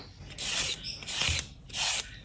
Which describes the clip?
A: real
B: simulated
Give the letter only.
A